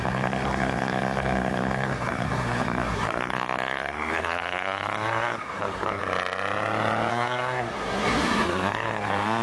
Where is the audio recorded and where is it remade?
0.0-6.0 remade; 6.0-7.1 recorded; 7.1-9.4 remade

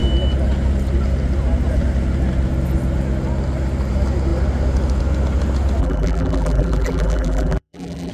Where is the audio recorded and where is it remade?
0.0-5.8 recorded; 5.8-8.1 remade

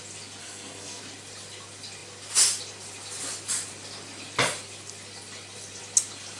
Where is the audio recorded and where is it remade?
0.0-0.4 recorded; 0.4-1.0 remade; 1.0-6.4 recorded

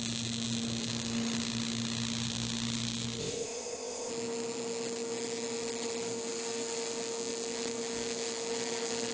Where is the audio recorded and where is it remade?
0.0-3.2 recorded; 3.2-4.1 remade; 4.1-9.1 recorded

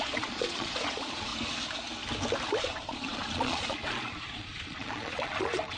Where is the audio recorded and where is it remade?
0.0-1.3 remade; 1.3-2.6 recorded; 2.6-5.8 remade

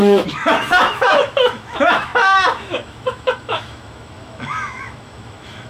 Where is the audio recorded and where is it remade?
0.0-5.7 remade